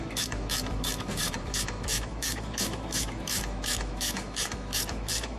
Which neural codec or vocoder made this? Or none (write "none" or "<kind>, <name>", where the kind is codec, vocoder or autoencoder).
autoencoder, DAC-VAE